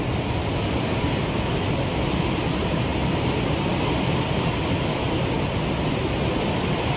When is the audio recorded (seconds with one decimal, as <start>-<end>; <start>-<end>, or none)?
0.0-7.0